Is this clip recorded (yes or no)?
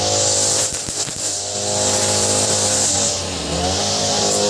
yes